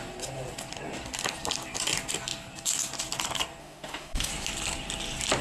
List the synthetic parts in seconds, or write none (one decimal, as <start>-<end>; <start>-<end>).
3.6-4.3